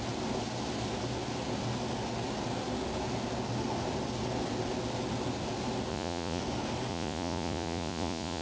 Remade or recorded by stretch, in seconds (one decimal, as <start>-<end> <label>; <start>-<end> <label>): 0.0-5.9 recorded; 5.9-6.4 remade; 6.4-6.9 recorded; 6.9-8.4 remade